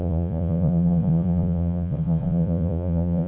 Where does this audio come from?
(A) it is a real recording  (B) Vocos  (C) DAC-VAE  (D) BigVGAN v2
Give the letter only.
B